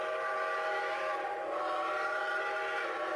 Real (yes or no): yes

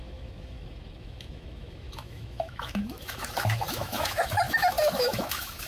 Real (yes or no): no